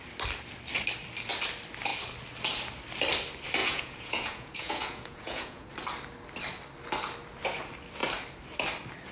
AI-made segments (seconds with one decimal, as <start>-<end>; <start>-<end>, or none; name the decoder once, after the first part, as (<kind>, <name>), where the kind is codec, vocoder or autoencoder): 3.6-5.7 (vocoder, Vocos)